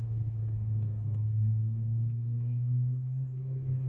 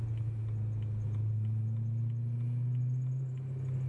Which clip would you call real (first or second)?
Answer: second